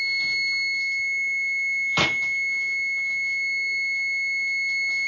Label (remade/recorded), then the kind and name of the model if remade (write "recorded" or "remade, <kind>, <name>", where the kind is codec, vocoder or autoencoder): recorded